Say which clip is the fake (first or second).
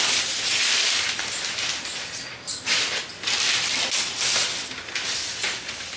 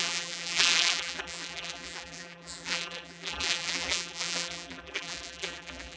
second